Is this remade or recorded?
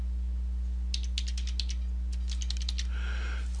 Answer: recorded